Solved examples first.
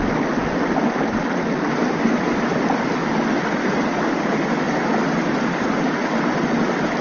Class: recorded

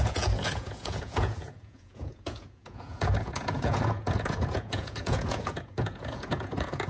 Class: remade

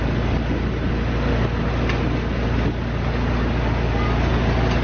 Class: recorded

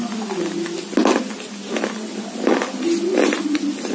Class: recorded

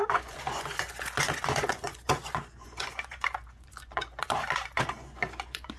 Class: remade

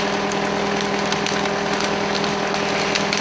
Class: recorded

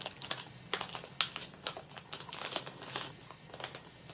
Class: recorded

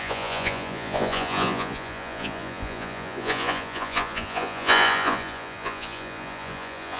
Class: remade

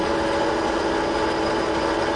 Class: recorded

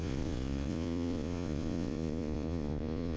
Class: remade